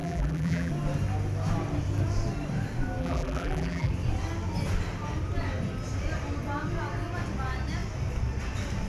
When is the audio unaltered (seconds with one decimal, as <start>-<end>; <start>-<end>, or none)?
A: 0.7-3.0; 3.9-8.9